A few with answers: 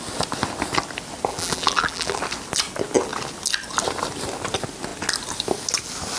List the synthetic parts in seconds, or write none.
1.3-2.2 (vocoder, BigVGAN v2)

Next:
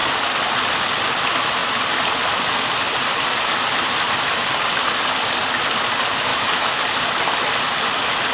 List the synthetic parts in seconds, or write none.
6.3-6.8 (autoencoder, DAC-VAE)

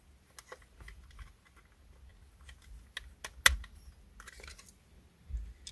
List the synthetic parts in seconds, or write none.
none

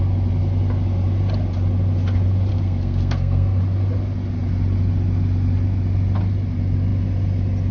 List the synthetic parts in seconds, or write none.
2.5-3.6 (codec, SNAC)

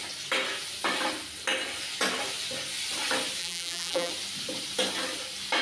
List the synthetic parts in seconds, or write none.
3.4-4.1 (vocoder, BigVGAN v2)

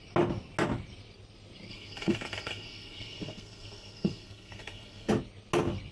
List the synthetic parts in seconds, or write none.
1.7-5.1 (codec, SNAC)